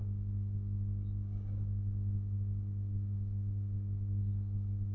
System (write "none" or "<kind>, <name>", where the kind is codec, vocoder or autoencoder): codec, DAC